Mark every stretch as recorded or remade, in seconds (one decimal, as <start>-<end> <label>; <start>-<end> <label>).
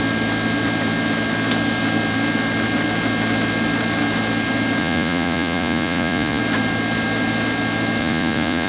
0.0-4.8 recorded; 4.8-6.4 remade; 6.4-8.0 recorded; 8.0-8.7 remade